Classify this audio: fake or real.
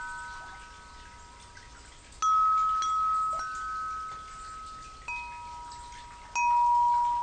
real